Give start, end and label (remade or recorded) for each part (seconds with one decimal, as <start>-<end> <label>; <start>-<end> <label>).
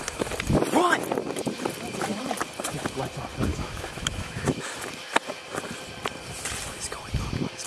0.0-3.5 recorded; 3.5-4.6 remade; 4.6-7.7 recorded